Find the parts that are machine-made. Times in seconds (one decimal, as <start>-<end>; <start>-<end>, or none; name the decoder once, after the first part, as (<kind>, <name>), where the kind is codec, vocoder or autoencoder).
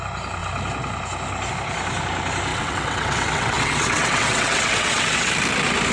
2.5-5.3 (vocoder, WaveNeXt)